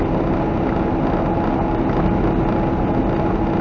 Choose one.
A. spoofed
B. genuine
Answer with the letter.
B